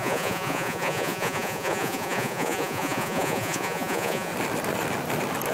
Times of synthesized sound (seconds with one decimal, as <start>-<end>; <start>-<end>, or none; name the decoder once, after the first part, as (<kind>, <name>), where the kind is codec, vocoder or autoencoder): 0.0-4.3 (vocoder, Vocos)